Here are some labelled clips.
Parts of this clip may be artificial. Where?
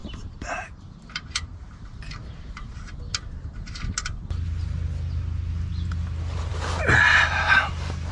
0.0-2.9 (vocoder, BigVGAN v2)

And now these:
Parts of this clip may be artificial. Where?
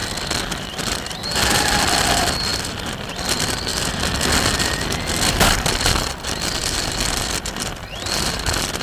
0.7-3.7 (vocoder, BigVGAN v2); 4.6-8.8